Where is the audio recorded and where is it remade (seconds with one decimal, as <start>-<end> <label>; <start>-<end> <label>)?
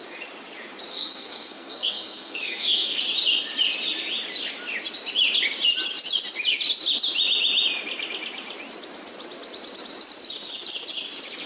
0.0-0.9 recorded; 0.9-3.0 remade; 3.0-11.5 recorded